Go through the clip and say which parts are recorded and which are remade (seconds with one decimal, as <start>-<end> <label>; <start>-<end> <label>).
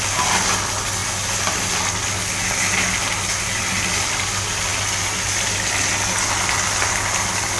0.0-7.6 recorded